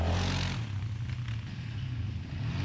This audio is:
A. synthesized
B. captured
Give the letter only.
B